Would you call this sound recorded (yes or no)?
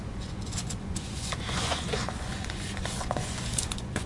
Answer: no